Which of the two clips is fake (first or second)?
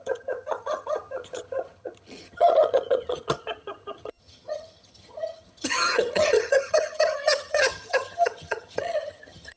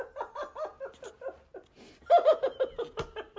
first